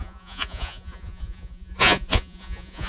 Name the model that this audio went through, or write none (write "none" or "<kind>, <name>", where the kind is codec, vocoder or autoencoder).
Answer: vocoder, Vocos